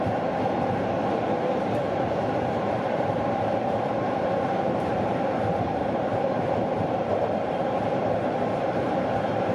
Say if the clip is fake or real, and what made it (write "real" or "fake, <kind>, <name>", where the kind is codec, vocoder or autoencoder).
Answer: fake, vocoder, BigVGAN v2